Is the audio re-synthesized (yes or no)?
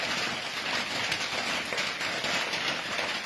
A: no